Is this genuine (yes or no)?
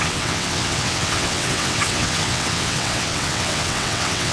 no